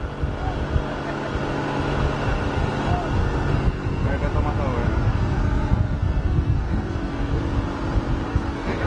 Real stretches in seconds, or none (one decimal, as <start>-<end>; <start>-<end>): 0.0-3.2; 4.1-4.9; 7.4-8.3

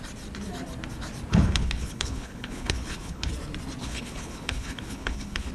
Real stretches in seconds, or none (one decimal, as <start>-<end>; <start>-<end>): 0.0-1.3; 3.3-3.8

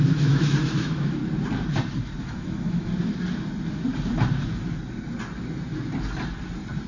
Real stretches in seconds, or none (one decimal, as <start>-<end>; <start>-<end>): 1.2-2.2; 2.9-6.9

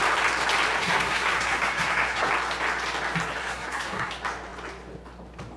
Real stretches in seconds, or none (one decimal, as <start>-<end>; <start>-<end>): 0.0-0.8; 2.3-3.4; 4.1-5.6

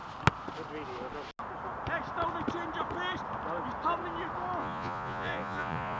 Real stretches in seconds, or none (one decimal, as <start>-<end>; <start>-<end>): 0.0-4.6

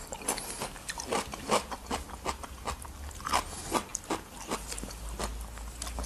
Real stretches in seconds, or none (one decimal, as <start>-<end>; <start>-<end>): 0.0-6.1

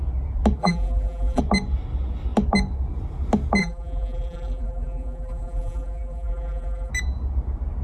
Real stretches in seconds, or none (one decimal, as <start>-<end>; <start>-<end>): 0.0-0.6; 1.4-3.6; 6.9-7.8

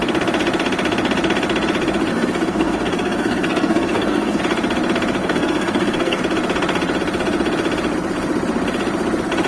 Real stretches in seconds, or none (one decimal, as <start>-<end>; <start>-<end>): 0.0-2.1; 4.4-5.2; 6.2-9.5